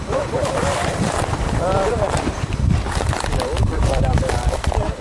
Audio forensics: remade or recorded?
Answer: remade